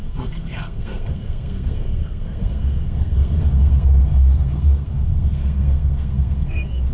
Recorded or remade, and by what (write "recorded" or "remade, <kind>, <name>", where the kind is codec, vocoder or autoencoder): remade, codec, SNAC